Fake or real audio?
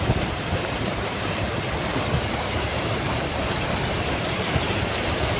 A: fake